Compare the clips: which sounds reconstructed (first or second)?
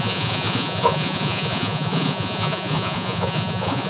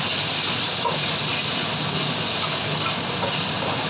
first